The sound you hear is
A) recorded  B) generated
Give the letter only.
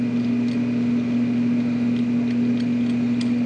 A